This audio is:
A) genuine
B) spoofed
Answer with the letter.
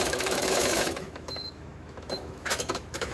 B